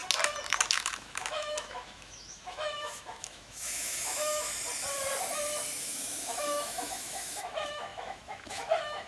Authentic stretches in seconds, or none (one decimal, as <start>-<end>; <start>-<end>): 0.0-0.7; 4.5-5.8